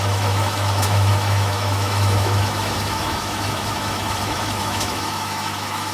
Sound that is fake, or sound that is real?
fake